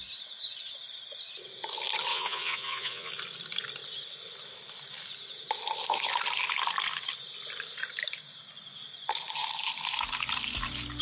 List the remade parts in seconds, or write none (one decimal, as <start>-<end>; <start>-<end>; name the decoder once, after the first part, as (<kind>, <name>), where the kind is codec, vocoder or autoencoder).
2.1-3.1 (vocoder, Vocos)